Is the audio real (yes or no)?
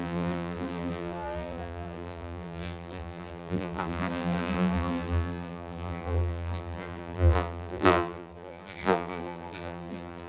no